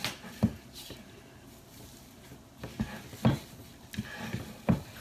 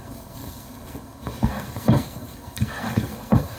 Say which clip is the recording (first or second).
first